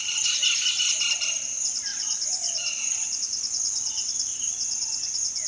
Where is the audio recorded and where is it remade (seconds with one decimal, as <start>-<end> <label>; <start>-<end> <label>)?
0.0-1.9 recorded; 1.9-5.5 remade